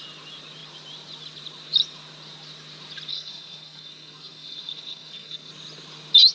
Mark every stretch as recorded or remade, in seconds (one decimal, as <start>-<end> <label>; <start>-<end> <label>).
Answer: 0.0-3.1 recorded; 3.1-5.5 remade; 5.5-6.3 recorded